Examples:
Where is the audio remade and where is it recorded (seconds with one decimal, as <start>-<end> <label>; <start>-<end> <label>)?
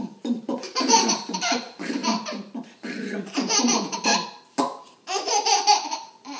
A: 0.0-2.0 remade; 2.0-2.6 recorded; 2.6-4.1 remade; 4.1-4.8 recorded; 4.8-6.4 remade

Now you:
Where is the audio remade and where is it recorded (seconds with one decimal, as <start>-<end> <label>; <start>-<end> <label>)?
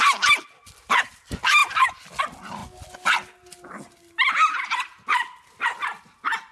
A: 0.0-6.5 recorded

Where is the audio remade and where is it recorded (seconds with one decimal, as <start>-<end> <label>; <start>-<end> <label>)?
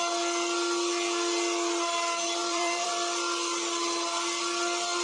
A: 0.0-2.4 recorded; 2.4-2.9 remade; 2.9-5.0 recorded